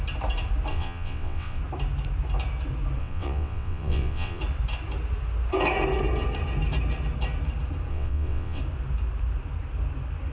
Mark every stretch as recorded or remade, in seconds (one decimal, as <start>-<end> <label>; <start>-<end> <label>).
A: 0.0-0.7 recorded; 0.7-1.6 remade; 1.6-3.0 recorded; 3.0-4.4 remade; 4.4-7.9 recorded; 7.9-8.6 remade; 8.6-10.3 recorded